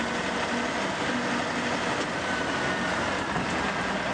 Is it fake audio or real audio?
real